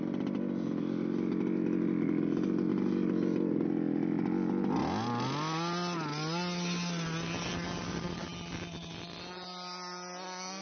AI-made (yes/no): no